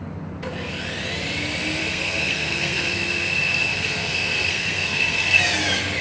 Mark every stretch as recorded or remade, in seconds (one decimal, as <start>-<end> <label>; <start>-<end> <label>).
0.0-1.8 recorded; 1.8-5.4 remade; 5.4-6.0 recorded